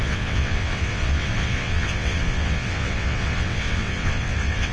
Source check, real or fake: fake